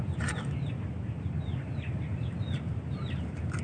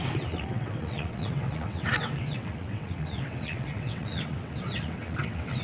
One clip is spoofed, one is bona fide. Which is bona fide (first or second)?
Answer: first